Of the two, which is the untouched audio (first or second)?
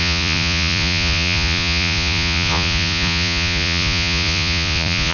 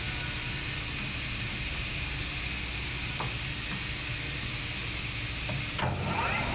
second